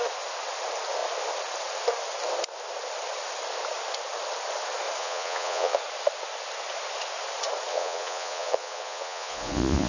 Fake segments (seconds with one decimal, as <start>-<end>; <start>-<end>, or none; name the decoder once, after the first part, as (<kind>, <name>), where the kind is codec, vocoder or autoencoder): 5.0-5.8 (vocoder, Vocos); 7.7-9.9

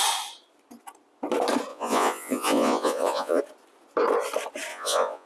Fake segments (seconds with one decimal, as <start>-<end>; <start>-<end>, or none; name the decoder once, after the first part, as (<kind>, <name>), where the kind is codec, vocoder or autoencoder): 1.7-3.4 (vocoder, Vocos); 4.7-5.3

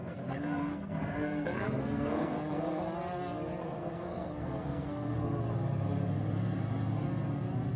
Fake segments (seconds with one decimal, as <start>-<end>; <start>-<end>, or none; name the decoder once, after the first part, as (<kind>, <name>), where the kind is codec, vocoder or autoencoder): 0.0-2.8 (codec, SNAC); 3.6-5.4

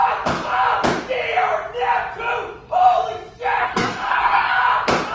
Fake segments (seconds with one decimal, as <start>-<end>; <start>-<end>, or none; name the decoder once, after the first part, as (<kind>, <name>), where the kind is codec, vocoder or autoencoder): 3.6-4.5 (codec, SNAC)

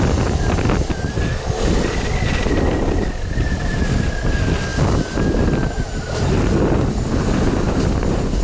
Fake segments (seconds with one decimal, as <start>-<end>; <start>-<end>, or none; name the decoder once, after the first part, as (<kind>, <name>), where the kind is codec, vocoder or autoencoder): none

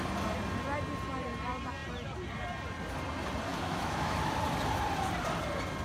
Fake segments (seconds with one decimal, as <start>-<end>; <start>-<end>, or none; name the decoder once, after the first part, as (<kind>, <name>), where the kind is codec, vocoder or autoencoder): 3.5-4.4 (autoencoder, DAC-VAE)

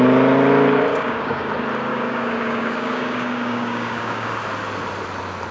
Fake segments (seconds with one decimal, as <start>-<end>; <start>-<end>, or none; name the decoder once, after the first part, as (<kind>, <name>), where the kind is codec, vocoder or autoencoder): 0.9-1.5 (codec, DAC); 1.9-4.3